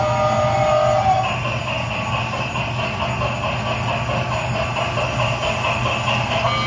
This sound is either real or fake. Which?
real